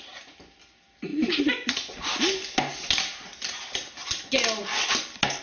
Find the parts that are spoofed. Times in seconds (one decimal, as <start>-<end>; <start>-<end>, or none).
none

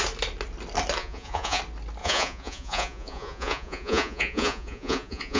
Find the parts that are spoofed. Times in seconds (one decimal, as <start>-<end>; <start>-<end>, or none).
1.0-1.6; 2.0-5.4

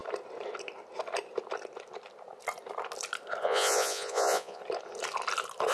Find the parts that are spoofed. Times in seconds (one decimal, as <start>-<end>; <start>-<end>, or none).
3.4-4.6

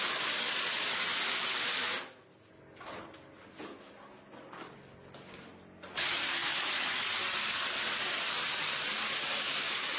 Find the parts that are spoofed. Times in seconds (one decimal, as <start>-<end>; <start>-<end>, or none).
6.4-6.9

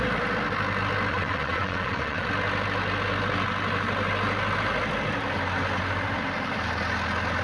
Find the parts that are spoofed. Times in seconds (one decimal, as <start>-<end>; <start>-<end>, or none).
1.1-2.3

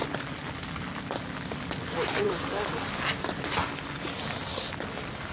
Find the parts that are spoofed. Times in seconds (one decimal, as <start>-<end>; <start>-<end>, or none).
none

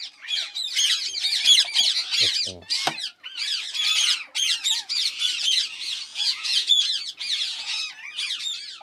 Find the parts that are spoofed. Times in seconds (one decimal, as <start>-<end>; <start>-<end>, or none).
6.1-7.9